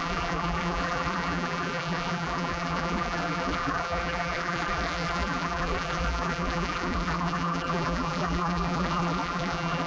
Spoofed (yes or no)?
yes